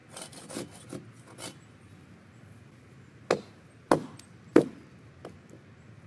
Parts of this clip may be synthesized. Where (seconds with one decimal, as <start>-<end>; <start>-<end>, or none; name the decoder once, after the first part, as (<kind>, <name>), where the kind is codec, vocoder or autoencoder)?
4.0-4.6 (vocoder, BigVGAN v2)